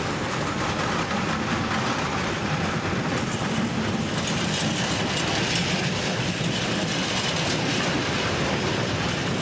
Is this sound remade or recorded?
recorded